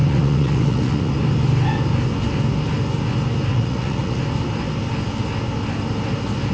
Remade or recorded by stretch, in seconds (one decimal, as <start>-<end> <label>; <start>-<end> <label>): 0.0-1.2 remade; 1.2-3.5 recorded; 3.5-4.2 remade; 4.2-6.5 recorded